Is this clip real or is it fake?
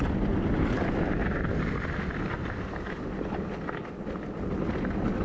real